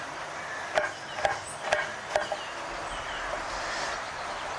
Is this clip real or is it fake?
real